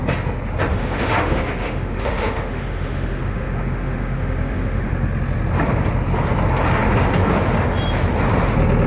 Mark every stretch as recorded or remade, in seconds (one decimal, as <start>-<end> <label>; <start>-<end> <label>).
0.0-0.7 recorded; 0.7-4.9 remade; 4.9-8.9 recorded